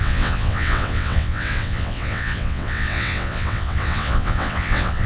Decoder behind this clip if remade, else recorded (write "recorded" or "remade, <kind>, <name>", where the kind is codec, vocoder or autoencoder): remade, vocoder, WaveNeXt